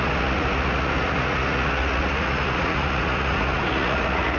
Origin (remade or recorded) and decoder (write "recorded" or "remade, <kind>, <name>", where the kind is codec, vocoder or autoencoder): remade, vocoder, Vocos